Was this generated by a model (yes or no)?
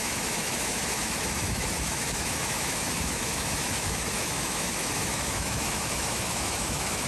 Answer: yes